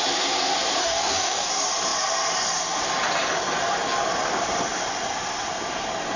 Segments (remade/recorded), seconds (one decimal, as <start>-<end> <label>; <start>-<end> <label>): 0.0-0.8 recorded; 0.8-1.5 remade; 1.5-6.2 recorded